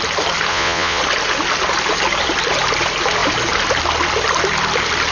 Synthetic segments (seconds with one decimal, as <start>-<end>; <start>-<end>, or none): 0.5-1.0